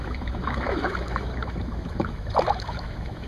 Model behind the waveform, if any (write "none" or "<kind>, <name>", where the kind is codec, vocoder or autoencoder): autoencoder, DAC-VAE